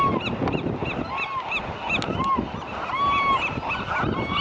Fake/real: real